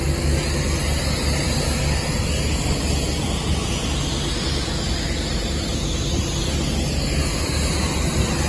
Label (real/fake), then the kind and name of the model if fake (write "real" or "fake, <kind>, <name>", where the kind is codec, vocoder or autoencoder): real